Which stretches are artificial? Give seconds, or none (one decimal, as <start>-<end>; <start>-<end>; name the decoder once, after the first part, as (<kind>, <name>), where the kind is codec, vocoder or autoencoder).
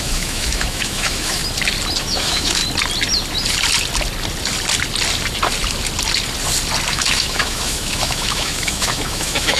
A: 0.0-1.4 (autoencoder, DAC-VAE); 2.0-2.6; 6.9-9.6